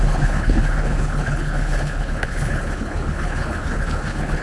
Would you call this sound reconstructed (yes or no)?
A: yes